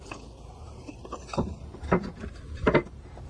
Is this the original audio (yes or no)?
no